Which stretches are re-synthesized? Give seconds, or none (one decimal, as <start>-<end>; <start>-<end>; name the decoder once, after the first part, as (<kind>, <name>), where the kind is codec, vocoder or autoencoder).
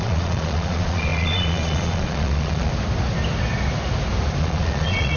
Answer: 0.0-2.7 (vocoder, Vocos); 4.4-5.2